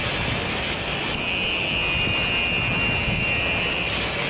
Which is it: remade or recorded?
recorded